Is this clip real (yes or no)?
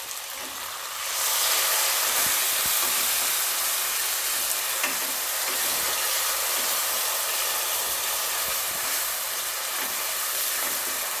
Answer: yes